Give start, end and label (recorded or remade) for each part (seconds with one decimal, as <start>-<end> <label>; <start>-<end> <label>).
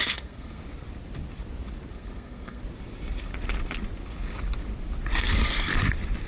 0.0-0.6 remade; 0.6-1.9 recorded; 1.9-2.6 remade; 2.6-5.2 recorded; 5.2-5.7 remade; 5.7-6.3 recorded